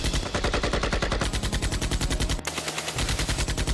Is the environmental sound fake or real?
real